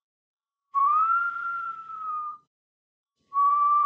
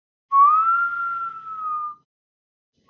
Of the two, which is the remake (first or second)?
first